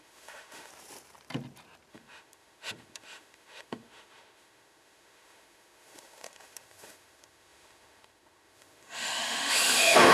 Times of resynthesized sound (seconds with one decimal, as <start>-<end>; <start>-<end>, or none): 0.0-0.7; 1.9-10.1

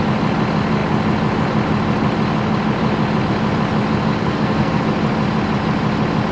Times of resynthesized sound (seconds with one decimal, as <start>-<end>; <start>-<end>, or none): 4.2-4.8

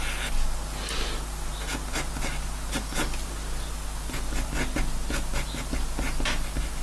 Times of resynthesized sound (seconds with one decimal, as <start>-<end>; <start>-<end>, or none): none

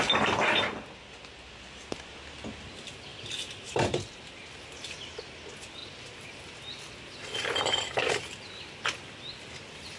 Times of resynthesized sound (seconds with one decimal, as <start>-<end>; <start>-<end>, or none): none

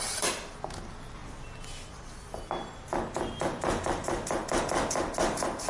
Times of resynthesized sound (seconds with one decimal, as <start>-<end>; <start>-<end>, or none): none